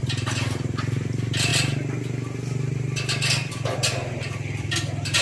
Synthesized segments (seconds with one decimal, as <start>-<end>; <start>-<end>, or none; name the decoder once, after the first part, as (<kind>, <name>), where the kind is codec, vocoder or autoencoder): none